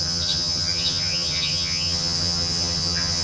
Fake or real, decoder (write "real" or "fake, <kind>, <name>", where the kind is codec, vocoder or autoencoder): fake, vocoder, HiFi-GAN